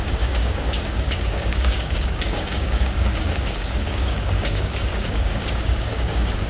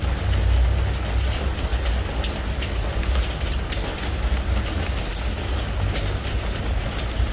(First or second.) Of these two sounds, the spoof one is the first